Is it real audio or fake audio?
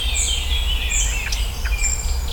real